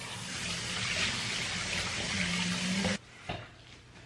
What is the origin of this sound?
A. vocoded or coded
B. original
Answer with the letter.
B